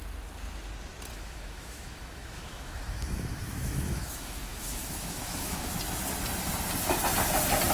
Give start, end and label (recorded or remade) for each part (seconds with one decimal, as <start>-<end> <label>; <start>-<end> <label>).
0.0-1.1 recorded; 1.1-5.7 remade; 5.7-7.7 recorded